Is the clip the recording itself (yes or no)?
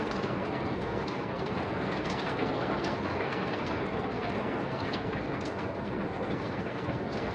no